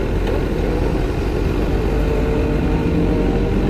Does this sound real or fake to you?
real